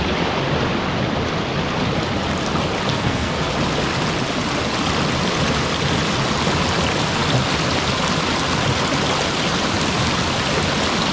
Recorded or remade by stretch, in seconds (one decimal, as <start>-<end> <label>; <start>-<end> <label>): 0.0-2.9 recorded; 2.9-3.5 remade; 3.5-11.1 recorded